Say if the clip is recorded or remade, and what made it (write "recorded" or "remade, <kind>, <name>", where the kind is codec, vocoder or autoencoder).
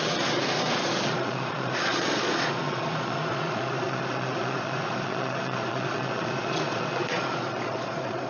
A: remade, vocoder, Vocos